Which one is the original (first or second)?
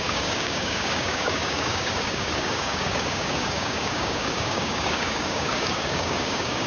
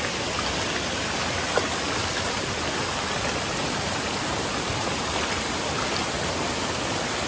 second